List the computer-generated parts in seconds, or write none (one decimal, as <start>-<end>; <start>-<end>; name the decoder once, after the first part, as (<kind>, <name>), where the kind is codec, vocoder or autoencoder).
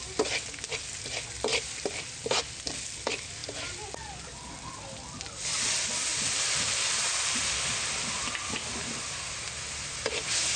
1.5-2.4 (vocoder, BigVGAN v2); 6.1-7.5